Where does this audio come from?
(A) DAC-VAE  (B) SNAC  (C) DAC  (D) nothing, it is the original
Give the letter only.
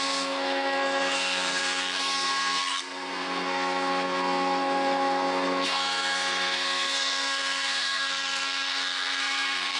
B